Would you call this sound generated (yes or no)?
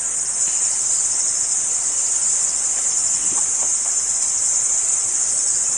no